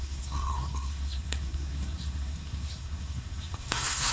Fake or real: fake